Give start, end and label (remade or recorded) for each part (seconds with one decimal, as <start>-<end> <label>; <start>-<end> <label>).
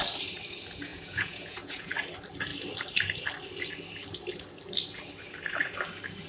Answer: 0.0-0.9 recorded; 0.9-1.9 remade; 1.9-6.3 recorded